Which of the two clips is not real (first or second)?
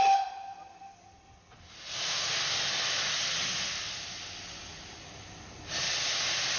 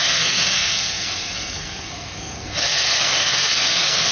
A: second